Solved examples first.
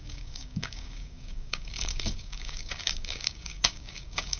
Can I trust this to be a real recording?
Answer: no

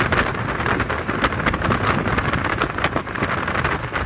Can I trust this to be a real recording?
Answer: yes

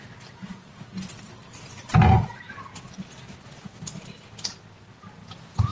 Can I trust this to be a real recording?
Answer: yes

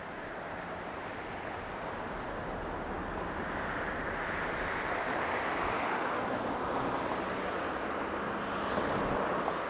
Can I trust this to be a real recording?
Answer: yes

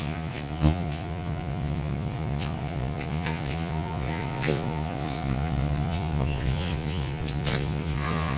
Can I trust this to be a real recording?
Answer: no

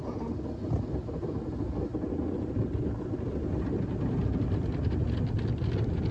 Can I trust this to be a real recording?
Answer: yes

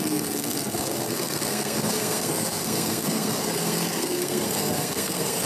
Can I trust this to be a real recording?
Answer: no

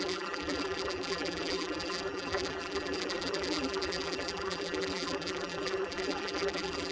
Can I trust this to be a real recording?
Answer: no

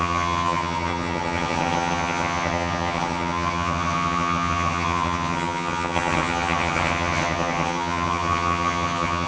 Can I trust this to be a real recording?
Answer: no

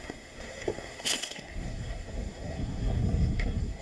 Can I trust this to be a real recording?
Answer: no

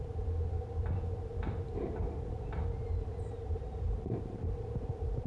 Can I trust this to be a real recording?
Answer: no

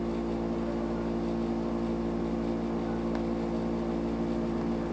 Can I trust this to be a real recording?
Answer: yes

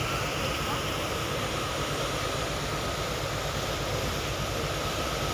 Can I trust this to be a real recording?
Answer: yes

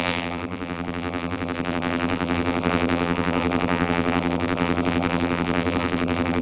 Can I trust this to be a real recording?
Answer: no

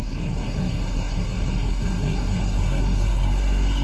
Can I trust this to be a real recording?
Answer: no